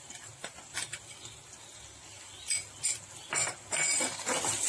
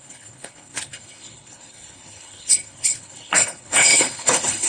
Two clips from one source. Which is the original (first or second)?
first